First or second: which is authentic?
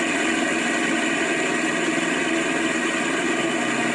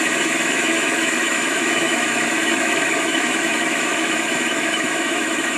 first